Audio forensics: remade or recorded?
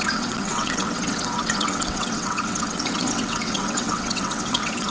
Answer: remade